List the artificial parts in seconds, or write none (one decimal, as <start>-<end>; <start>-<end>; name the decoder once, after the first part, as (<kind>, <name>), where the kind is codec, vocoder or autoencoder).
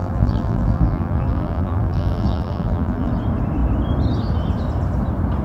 0.0-3.1 (vocoder, BigVGAN v2)